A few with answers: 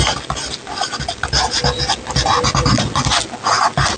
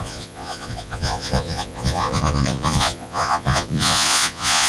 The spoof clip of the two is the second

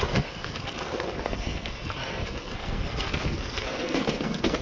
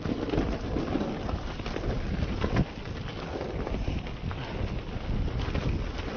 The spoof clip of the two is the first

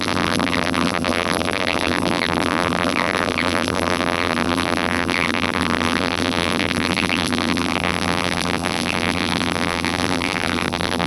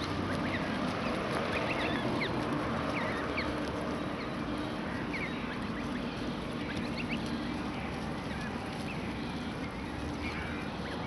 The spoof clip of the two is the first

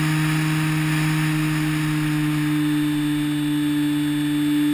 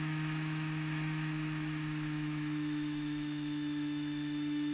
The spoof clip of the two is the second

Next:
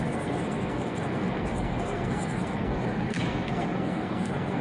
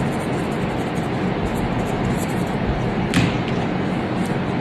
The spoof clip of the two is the first